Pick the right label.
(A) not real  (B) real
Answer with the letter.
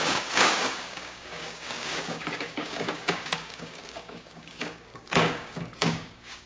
A